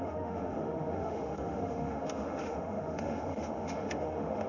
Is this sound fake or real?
fake